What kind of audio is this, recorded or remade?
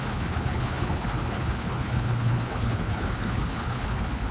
remade